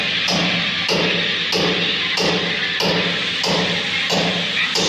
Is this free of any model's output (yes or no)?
yes